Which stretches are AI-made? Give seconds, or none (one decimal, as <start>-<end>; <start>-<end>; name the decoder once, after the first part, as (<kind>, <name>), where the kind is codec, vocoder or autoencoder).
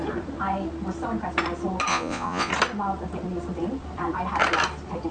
1.9-2.5 (vocoder, Vocos)